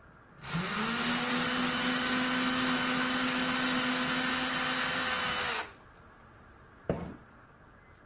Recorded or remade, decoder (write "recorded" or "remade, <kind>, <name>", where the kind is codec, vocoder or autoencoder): recorded